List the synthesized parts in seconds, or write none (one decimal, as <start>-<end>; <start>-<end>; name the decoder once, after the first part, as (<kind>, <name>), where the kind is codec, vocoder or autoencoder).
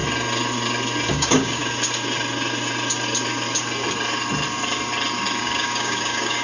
1.1-1.6 (codec, DAC); 5.4-6.4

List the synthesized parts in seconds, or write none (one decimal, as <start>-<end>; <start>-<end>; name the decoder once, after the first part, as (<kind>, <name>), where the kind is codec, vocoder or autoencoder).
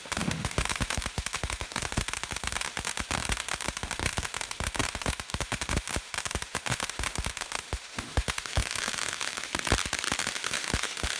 0.0-9.5 (autoencoder, DAC-VAE); 10.2-11.2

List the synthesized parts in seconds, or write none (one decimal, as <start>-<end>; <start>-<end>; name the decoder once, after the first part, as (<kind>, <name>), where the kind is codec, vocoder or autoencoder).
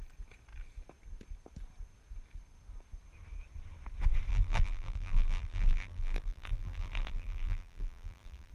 4.3-8.5 (vocoder, BigVGAN v2)